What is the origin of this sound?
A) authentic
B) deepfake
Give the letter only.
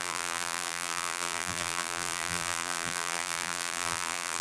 B